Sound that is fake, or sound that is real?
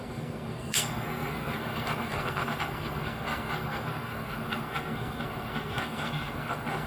fake